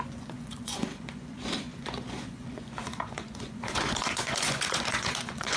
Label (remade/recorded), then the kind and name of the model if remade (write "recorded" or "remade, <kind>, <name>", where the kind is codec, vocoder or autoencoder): remade, vocoder, Vocos